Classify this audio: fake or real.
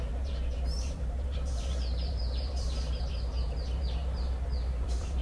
fake